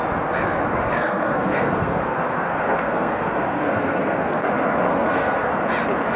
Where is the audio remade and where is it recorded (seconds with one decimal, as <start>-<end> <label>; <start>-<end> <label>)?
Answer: 0.0-0.8 recorded; 0.8-4.5 remade; 4.5-4.9 recorded; 4.9-5.5 remade; 5.5-6.2 recorded